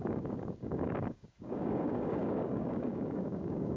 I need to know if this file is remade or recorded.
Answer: remade